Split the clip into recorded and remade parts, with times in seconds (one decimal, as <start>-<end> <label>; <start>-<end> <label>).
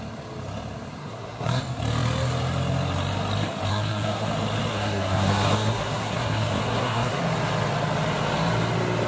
0.0-1.0 recorded; 1.0-1.6 remade; 1.6-3.7 recorded; 3.7-4.3 remade; 4.3-4.7 recorded; 4.7-7.2 remade; 7.2-9.1 recorded